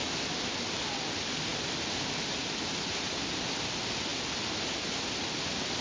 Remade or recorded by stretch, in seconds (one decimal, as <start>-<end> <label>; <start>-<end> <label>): 0.0-5.8 recorded